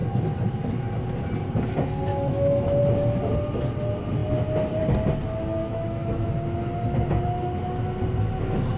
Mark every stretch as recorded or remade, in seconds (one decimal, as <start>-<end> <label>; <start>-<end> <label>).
0.0-2.1 recorded; 2.1-2.8 remade; 2.8-5.6 recorded; 5.6-6.3 remade; 6.3-8.8 recorded